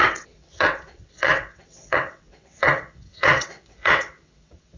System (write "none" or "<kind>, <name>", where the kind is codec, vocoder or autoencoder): vocoder, WaveNeXt